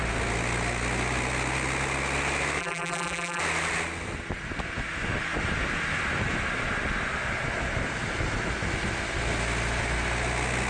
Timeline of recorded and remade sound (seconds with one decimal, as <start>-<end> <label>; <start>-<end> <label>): 0.0-2.6 recorded; 2.6-3.4 remade; 3.4-10.7 recorded